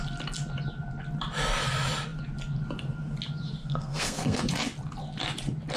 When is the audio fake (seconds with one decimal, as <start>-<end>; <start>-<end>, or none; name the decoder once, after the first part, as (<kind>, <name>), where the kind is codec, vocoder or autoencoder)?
3.6-4.4 (codec, SNAC)